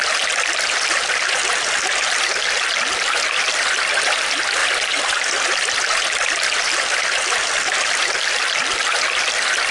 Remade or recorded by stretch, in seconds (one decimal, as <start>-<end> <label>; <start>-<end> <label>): 0.0-4.6 recorded; 4.6-7.9 remade; 7.9-9.7 recorded